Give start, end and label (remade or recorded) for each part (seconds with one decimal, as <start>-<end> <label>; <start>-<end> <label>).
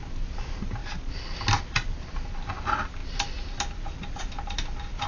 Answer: 0.0-5.1 recorded